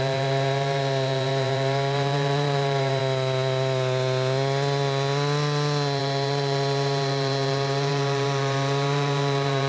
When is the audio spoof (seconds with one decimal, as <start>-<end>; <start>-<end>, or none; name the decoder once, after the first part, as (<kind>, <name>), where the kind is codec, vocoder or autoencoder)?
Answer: 0.0-3.0 (vocoder, BigVGAN v2); 6.0-9.7